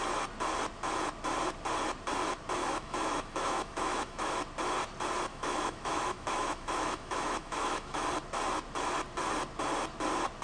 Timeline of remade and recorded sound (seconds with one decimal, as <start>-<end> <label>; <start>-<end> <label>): 0.0-2.6 recorded; 2.6-4.3 remade; 4.3-5.3 recorded; 5.3-8.1 remade; 8.1-10.4 recorded